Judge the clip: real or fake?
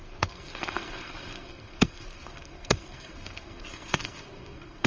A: fake